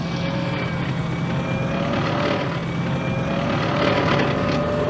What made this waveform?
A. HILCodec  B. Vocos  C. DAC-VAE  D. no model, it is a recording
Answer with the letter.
D